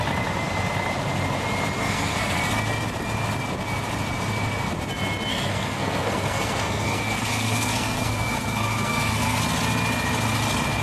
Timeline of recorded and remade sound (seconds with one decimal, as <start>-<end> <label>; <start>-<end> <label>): 0.0-1.8 recorded; 1.8-2.4 remade; 2.4-5.3 recorded; 5.3-9.4 remade; 9.4-10.8 recorded